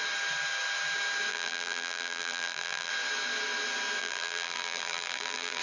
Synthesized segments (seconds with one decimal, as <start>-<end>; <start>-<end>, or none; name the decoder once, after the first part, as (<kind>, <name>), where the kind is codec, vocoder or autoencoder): 1.3-2.9 (vocoder, BigVGAN v2); 4.0-5.6